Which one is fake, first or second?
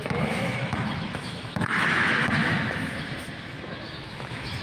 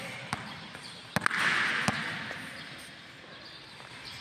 first